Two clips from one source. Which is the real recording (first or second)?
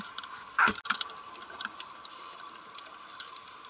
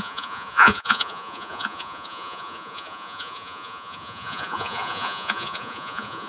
first